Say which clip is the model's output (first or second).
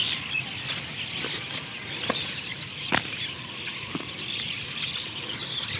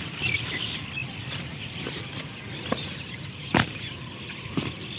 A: second